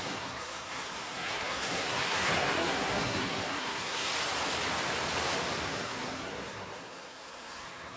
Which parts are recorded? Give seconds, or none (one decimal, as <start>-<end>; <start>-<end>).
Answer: 4.1-5.7

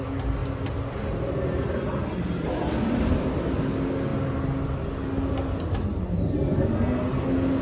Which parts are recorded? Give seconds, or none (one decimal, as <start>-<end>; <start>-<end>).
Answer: 0.0-7.6

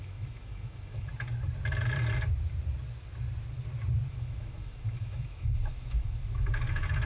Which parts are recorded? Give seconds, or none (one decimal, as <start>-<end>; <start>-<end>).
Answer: 1.1-4.1

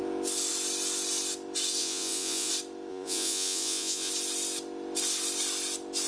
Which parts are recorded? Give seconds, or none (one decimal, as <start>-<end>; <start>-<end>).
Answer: 0.0-1.8; 2.5-2.9; 4.1-6.1

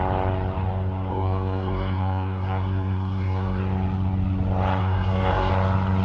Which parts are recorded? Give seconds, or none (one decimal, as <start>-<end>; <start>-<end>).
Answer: 0.0-1.1; 3.6-4.8; 5.5-6.0

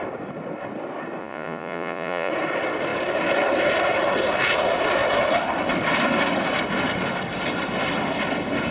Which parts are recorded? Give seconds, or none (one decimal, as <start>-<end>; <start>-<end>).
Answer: 0.0-1.2; 2.3-8.7

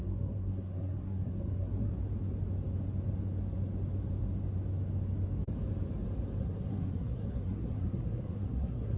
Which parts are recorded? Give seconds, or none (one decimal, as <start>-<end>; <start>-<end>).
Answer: 1.9-6.4